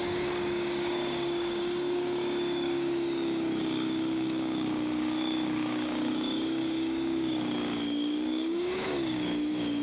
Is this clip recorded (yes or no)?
no